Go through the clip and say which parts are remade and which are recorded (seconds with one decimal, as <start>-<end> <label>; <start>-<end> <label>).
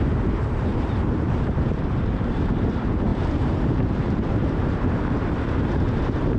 0.0-6.4 remade